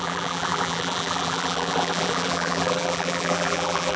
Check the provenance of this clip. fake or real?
fake